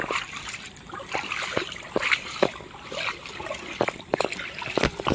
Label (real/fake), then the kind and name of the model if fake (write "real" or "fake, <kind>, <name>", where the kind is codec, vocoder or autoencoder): fake, vocoder, BigVGAN v2